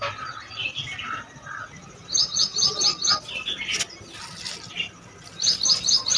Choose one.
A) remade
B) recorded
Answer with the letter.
B